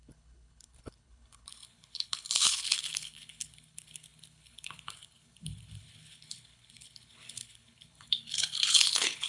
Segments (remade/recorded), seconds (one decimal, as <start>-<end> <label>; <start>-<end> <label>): 0.0-9.3 remade